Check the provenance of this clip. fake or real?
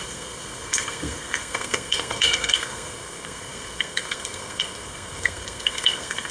fake